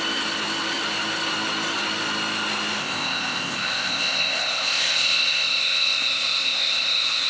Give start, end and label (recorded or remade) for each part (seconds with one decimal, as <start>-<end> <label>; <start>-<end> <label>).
0.0-2.8 recorded; 2.8-7.3 remade